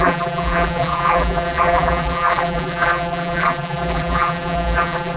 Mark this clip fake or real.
fake